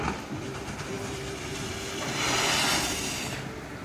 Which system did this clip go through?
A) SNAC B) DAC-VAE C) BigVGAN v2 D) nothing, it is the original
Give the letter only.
D